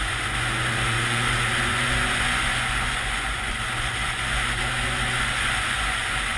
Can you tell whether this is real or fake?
fake